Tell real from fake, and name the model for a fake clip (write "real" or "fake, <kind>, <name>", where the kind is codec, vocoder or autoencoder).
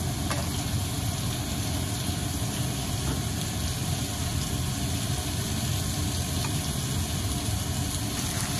real